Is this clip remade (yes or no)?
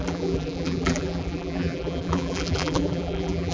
yes